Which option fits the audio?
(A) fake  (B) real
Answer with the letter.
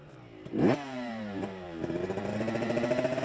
A